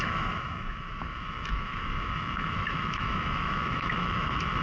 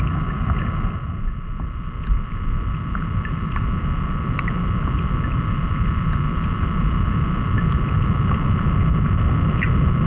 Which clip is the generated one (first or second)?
first